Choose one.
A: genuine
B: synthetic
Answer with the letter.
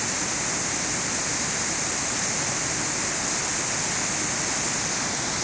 A